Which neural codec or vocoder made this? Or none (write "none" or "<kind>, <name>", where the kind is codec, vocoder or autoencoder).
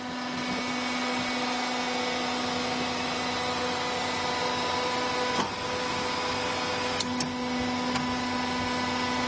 none